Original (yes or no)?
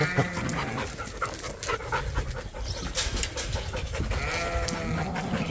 yes